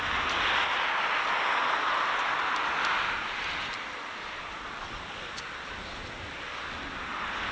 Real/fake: real